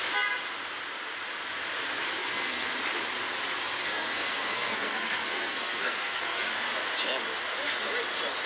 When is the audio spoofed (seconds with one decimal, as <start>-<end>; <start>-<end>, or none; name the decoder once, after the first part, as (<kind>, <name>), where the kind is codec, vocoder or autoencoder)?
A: 2.2-2.7 (codec, SNAC); 3.8-6.5